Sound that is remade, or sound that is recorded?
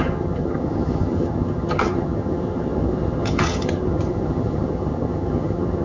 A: remade